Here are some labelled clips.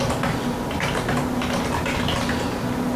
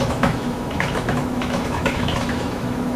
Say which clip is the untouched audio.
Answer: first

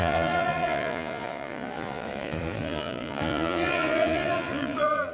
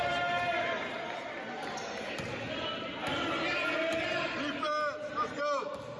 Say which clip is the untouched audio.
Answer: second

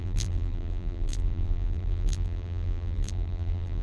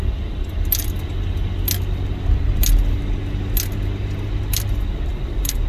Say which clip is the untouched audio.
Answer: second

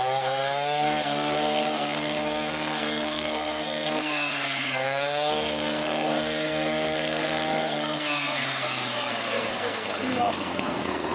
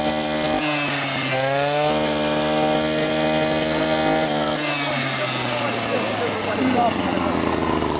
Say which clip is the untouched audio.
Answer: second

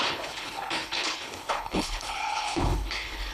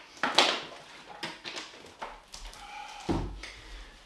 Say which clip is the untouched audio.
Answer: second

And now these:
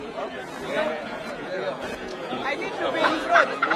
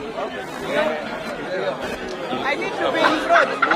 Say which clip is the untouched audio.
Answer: second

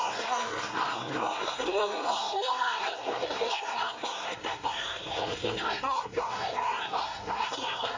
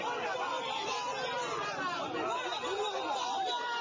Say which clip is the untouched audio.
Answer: second